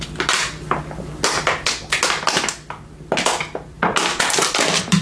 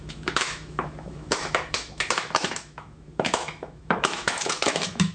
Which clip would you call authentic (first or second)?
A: first